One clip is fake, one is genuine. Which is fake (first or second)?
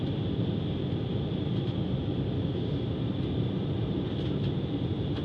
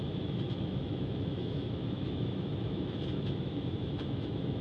second